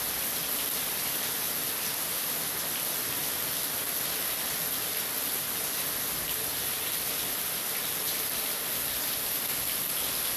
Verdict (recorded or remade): recorded